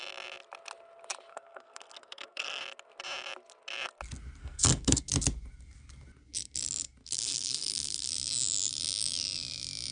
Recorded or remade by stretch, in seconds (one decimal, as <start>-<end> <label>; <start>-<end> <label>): 0.0-1.3 recorded; 1.3-2.6 remade; 2.6-4.4 recorded; 4.4-5.0 remade; 5.0-7.0 recorded; 7.0-8.1 remade; 8.1-9.9 recorded